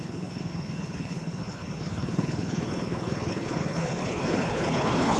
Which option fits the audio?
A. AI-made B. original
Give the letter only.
A